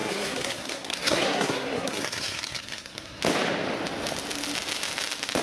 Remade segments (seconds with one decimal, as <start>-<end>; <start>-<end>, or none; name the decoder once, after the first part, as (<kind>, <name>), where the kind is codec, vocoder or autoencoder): 0.0-3.2 (codec, SNAC)